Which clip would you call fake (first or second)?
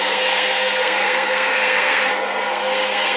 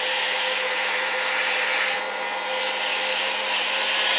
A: first